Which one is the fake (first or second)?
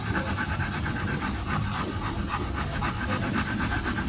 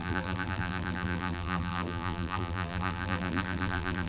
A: second